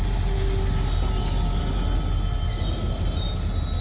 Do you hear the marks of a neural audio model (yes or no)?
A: no